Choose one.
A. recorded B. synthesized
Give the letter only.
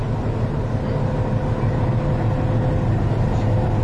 A